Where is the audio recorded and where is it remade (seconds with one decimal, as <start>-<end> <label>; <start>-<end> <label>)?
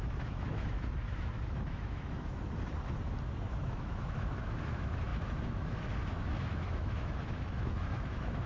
0.0-2.4 remade; 2.4-3.5 recorded; 3.5-8.5 remade